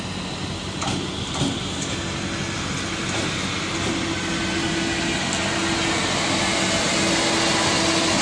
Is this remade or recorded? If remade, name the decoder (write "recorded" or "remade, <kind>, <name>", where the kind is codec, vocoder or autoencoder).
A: recorded